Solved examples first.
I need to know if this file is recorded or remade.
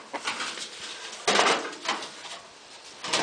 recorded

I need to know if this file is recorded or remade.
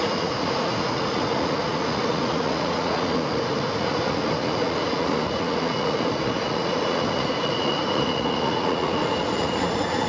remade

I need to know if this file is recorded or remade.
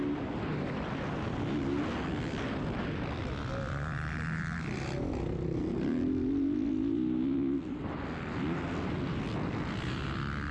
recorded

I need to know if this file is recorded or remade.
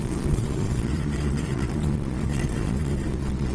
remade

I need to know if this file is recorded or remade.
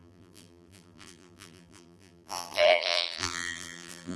remade